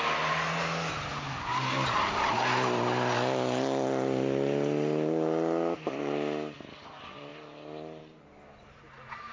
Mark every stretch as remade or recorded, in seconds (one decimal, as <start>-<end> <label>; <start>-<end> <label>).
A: 0.0-9.3 recorded